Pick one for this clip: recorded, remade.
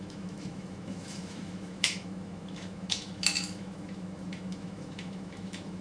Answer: remade